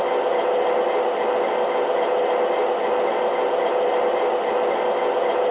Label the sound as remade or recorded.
recorded